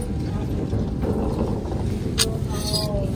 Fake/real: real